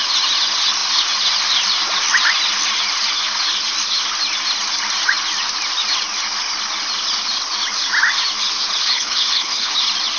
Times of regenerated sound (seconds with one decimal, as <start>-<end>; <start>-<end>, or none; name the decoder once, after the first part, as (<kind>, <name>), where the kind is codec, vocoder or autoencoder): 8.8-9.7 (codec, HILCodec)

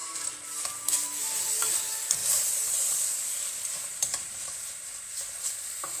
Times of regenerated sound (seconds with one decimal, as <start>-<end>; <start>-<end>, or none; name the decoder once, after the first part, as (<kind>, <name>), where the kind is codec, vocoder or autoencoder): 2.2-6.0 (vocoder, BigVGAN v2)

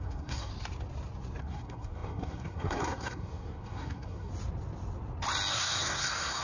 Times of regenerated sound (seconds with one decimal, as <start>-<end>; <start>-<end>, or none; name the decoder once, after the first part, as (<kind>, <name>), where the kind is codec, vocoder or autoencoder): 0.0-0.5 (codec, SNAC); 1.4-4.3; 5.5-6.4

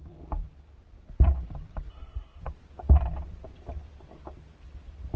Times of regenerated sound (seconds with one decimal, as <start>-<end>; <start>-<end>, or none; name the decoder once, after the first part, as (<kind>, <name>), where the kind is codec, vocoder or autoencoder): 1.9-2.4 (codec, SNAC)

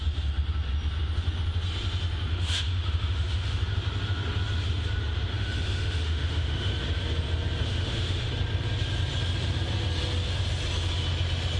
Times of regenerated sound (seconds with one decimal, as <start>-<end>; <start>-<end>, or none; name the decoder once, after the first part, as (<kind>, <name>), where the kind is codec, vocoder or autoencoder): 2.3-3.6 (autoencoder, DAC-VAE); 5.3-6.7; 7.6-8.3